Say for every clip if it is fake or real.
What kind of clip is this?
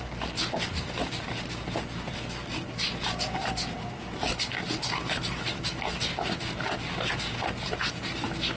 real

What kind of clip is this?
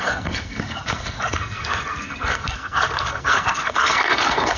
fake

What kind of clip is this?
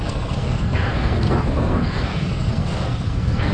fake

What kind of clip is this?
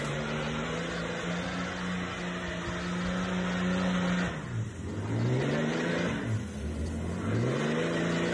real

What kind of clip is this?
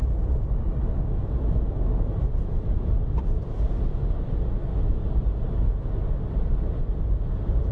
real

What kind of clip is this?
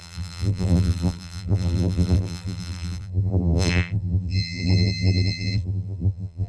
fake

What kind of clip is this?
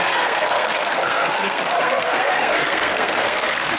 fake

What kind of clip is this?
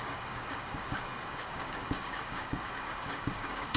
fake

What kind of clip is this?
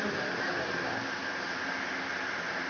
real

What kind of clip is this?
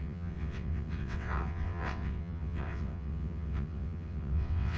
fake